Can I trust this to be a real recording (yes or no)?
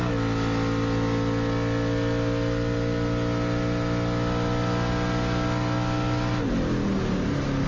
yes